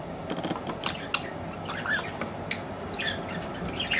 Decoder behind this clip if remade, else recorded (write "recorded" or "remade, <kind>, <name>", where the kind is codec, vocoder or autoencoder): recorded